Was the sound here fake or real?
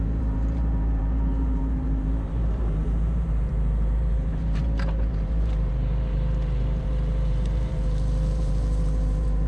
fake